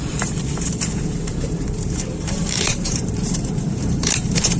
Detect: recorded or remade remade